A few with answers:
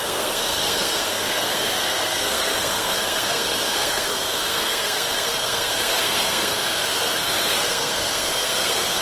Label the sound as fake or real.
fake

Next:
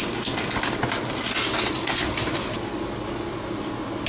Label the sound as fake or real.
real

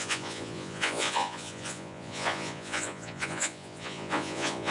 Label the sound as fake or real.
fake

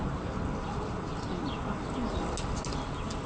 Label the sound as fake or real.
real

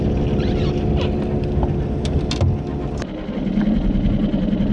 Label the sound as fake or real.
real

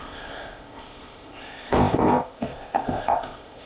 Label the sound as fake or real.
fake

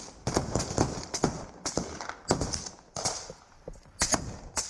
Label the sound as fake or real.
real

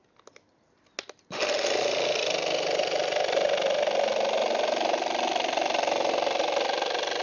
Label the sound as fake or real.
real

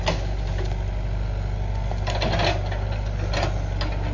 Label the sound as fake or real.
real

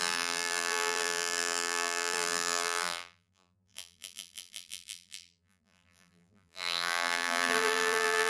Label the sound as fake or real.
fake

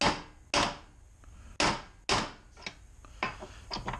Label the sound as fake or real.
real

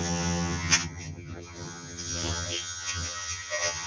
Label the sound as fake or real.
fake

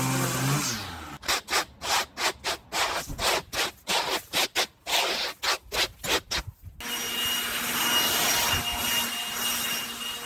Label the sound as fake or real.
real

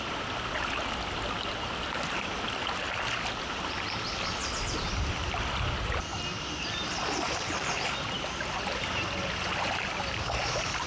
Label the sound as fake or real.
real